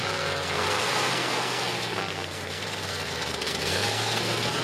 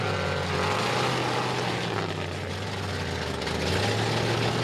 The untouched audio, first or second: second